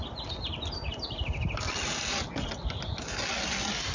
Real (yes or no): yes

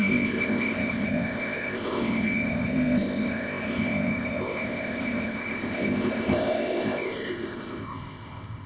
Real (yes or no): no